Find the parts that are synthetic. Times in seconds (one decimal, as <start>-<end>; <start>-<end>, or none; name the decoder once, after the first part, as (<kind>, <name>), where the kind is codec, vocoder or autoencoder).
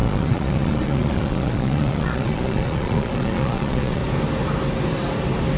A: 0.0-4.0 (vocoder, Vocos)